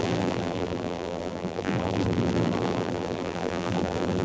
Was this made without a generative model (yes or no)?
no